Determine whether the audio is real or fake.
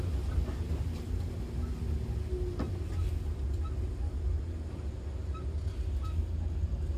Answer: real